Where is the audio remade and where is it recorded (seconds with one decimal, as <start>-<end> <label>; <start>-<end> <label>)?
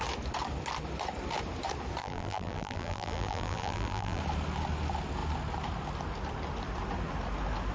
0.0-2.0 recorded; 2.0-4.2 remade; 4.2-7.7 recorded